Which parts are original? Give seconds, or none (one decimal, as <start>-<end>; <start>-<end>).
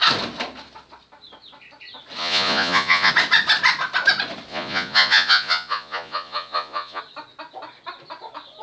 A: 0.0-2.2; 3.1-4.5; 7.0-8.6